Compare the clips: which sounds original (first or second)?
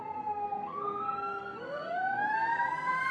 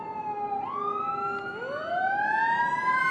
second